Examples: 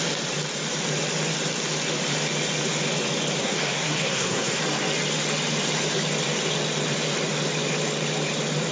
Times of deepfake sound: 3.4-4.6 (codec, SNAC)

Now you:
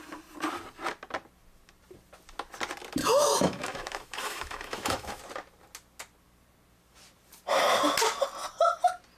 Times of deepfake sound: 3.0-5.2 (autoencoder, DAC-VAE)

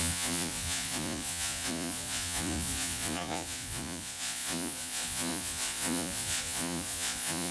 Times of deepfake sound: 0.0-7.5 (vocoder, Vocos)

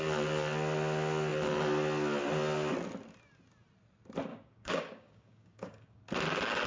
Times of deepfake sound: 4.3-6.0 (codec, DAC)